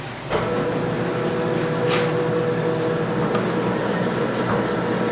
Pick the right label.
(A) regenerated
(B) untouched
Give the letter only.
B